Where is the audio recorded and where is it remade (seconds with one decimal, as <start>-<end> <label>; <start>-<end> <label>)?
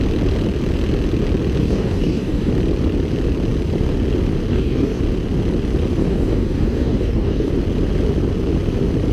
0.0-1.6 recorded; 1.6-2.5 remade; 2.5-4.5 recorded; 4.5-5.0 remade; 5.0-6.0 recorded; 6.0-7.5 remade; 7.5-9.1 recorded